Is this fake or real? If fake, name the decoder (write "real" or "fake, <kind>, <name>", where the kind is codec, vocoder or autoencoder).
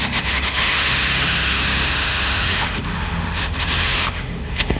fake, autoencoder, DAC-VAE